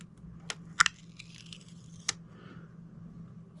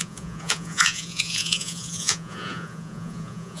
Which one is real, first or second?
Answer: first